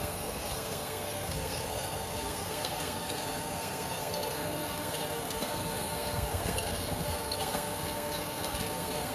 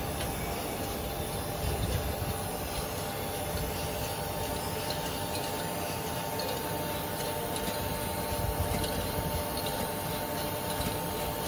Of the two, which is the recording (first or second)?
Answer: second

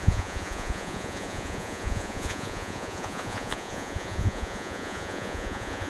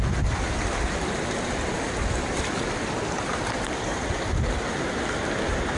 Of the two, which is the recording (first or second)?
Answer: second